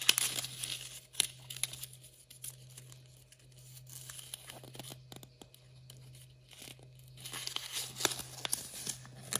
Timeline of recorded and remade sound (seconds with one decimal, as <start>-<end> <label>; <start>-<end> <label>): 0.0-9.4 recorded